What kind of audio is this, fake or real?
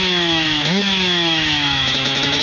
fake